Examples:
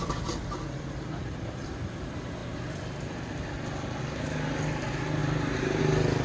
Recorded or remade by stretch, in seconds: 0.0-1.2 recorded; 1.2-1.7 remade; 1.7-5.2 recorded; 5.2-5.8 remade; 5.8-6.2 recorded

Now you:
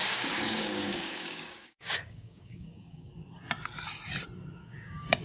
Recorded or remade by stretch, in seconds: 0.0-3.1 remade; 3.1-4.6 recorded; 4.6-5.2 remade